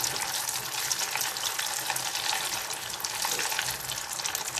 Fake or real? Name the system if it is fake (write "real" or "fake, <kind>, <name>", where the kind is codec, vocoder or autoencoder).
real